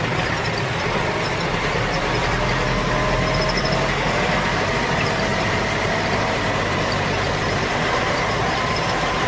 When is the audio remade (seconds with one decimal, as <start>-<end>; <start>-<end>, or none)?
5.3-9.3